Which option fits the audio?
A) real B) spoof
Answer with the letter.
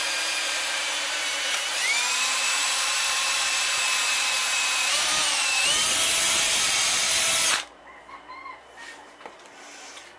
B